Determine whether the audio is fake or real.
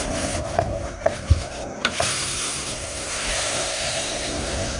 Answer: fake